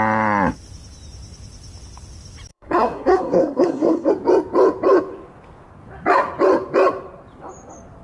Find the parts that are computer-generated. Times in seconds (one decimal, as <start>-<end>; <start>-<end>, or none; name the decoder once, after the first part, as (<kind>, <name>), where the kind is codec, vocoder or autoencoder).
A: 2.5-4.1 (codec, SNAC)